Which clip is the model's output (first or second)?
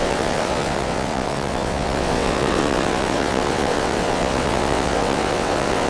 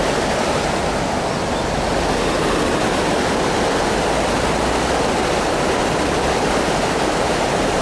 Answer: first